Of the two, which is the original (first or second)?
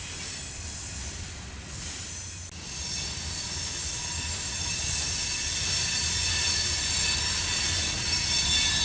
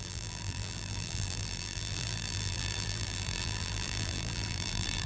first